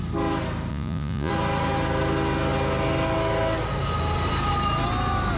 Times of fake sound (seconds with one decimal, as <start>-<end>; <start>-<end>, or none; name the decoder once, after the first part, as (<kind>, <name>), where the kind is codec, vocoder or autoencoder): 0.7-1.3 (vocoder, Vocos)